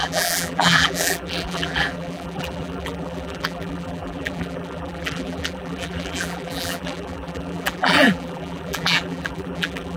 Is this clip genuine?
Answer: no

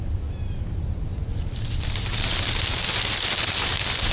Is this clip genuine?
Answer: yes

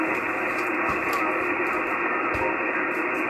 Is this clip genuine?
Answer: yes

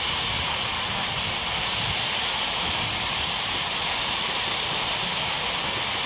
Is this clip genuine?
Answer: yes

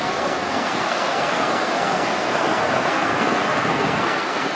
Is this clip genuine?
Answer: no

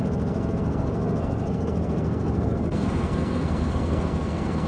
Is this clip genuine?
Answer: no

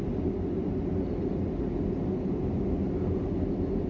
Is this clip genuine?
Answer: yes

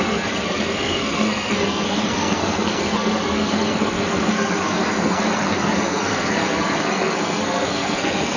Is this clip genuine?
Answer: no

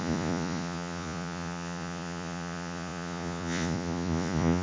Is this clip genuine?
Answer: no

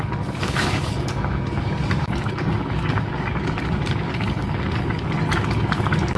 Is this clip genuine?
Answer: no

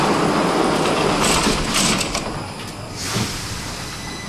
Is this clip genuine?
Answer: yes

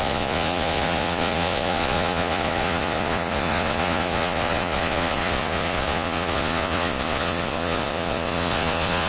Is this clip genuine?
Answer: no